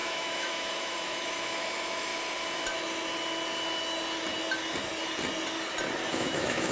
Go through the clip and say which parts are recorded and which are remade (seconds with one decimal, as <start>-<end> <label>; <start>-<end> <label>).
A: 0.0-2.1 remade; 2.1-6.1 recorded; 6.1-6.7 remade